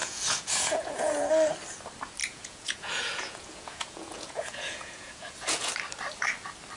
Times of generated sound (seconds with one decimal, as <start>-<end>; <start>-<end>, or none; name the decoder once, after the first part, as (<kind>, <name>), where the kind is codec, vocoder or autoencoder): 0.0-1.3 (vocoder, Vocos); 2.2-5.7